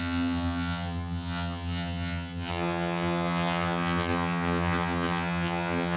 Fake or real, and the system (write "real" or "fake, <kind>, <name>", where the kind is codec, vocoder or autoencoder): fake, vocoder, HiFi-GAN